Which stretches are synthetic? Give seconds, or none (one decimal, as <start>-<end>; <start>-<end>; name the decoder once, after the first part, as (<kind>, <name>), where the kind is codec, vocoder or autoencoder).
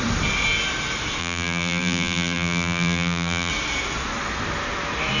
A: 1.2-3.5 (vocoder, BigVGAN v2)